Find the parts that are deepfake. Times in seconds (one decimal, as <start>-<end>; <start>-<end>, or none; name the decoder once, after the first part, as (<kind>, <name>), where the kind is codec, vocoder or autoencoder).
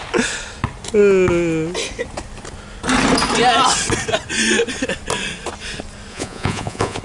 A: 6.1-7.0 (vocoder, Vocos)